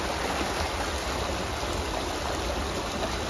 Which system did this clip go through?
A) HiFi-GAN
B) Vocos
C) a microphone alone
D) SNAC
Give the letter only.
C